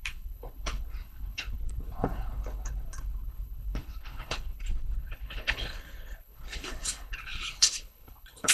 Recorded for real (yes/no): no